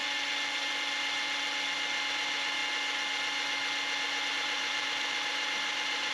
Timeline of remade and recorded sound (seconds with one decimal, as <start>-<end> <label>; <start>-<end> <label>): 0.0-2.1 recorded; 2.1-2.6 remade; 2.6-4.3 recorded; 4.3-6.1 remade